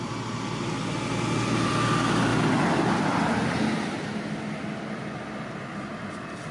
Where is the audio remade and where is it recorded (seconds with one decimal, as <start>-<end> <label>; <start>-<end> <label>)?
0.0-6.5 recorded